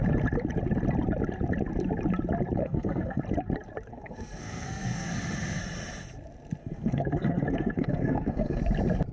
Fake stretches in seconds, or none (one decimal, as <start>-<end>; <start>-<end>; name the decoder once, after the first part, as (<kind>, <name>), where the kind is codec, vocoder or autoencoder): 2.6-3.2 (codec, SNAC); 3.9-5.1; 6.6-8.6